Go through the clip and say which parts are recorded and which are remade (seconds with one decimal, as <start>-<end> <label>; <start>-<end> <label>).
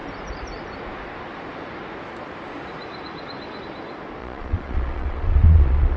0.0-4.2 recorded; 4.2-6.0 remade